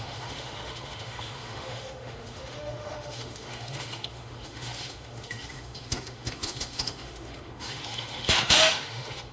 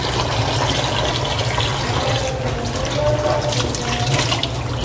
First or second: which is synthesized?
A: first